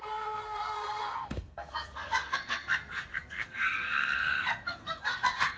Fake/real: fake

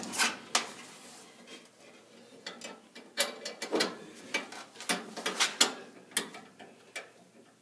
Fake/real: real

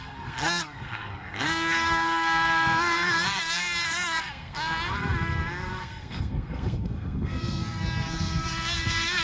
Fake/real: fake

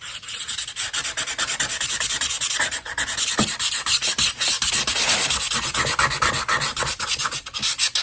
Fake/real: real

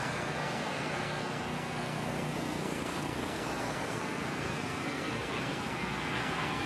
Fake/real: fake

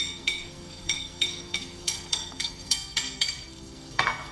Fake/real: fake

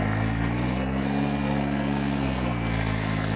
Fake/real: fake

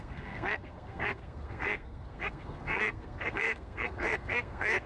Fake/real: fake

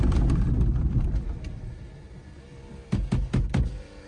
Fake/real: real